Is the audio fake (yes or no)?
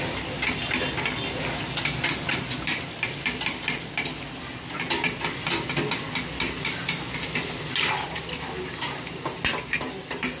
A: no